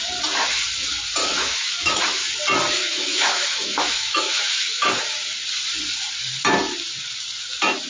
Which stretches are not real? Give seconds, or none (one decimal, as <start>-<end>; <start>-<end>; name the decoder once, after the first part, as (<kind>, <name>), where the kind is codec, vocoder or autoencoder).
1.2-2.0 (autoencoder, DAC-VAE); 2.8-5.0